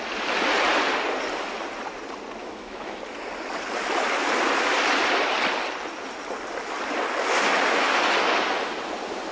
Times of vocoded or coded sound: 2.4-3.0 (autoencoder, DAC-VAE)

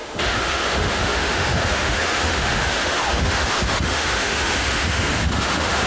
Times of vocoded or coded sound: 0.0-5.9 (autoencoder, DAC-VAE)

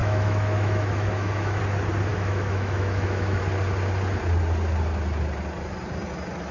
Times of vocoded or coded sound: 0.0-1.6 (autoencoder, DAC-VAE); 2.1-3.4